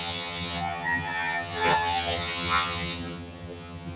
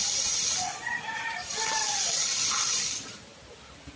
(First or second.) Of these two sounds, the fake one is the first